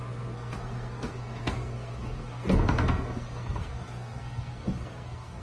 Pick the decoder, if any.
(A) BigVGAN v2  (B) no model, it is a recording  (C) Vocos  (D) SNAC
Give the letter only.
D